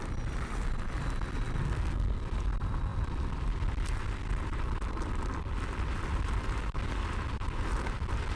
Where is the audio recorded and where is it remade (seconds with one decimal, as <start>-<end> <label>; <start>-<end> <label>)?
0.0-1.6 recorded; 1.6-2.2 remade; 2.2-8.4 recorded